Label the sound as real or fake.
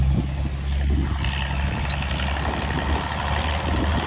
real